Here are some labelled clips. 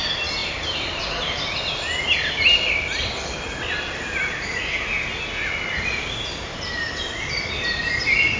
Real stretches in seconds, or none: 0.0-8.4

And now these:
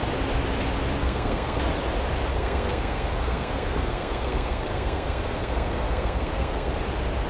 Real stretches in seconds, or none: 0.0-1.0; 1.6-2.3; 6.7-7.3

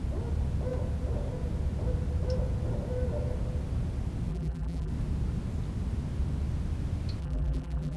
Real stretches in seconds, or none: 0.0-4.3; 4.9-7.2